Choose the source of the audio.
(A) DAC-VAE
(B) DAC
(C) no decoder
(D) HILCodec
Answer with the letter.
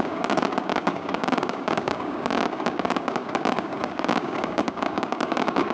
B